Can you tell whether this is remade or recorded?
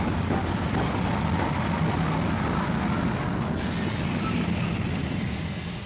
recorded